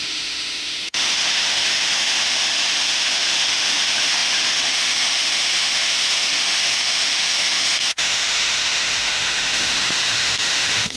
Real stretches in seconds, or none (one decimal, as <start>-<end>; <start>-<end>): none